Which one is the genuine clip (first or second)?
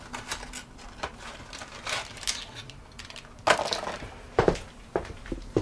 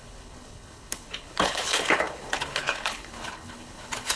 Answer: first